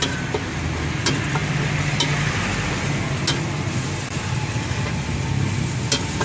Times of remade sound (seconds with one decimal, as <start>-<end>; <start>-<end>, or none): none